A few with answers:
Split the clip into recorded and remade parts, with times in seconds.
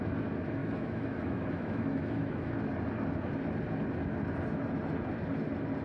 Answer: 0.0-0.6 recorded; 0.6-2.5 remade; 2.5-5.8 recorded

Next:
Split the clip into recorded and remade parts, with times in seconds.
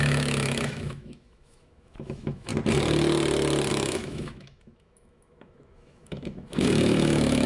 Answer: 0.0-2.5 remade; 2.5-3.7 recorded; 3.7-7.5 remade